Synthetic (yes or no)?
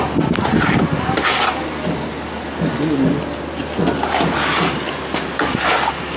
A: no